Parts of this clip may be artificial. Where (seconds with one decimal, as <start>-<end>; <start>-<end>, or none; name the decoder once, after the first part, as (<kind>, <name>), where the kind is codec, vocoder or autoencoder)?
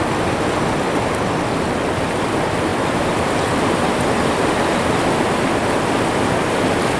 none